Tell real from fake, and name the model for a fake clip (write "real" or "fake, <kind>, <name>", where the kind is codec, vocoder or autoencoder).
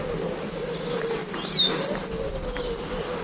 real